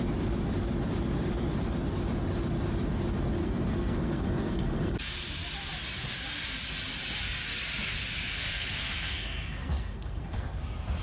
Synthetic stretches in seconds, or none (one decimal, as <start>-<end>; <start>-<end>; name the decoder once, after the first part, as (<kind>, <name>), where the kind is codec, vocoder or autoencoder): 3.4-5.0 (codec, SNAC); 8.3-10.6